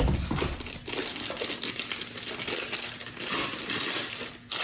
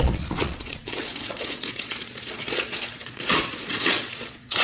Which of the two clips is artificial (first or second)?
second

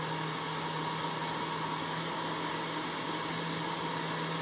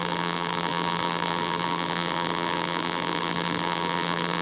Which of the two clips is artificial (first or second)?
second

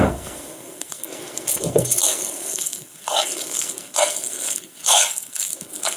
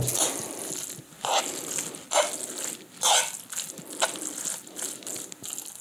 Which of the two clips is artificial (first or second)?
first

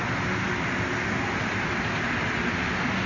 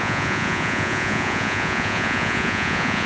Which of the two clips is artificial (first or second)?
second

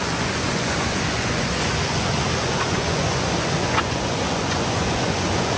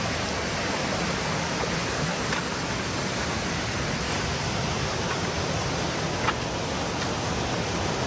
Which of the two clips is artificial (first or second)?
first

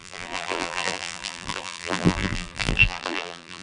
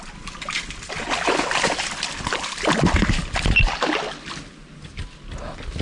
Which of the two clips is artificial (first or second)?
first